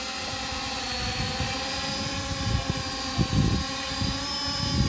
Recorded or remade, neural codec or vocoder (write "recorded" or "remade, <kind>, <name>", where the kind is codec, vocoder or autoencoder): recorded